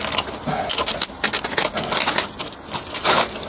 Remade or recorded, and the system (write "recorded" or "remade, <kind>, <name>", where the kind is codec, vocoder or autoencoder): recorded